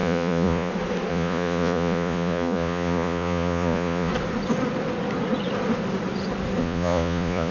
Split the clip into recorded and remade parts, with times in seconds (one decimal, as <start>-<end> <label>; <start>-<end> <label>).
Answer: 0.0-0.7 remade; 0.7-1.1 recorded; 1.1-4.1 remade; 4.1-6.6 recorded; 6.6-7.5 remade